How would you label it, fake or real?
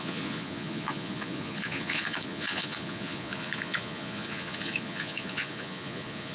fake